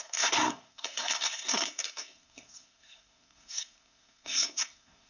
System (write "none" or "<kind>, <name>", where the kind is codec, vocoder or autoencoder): codec, SNAC